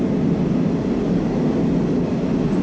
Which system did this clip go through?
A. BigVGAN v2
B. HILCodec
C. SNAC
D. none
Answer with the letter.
D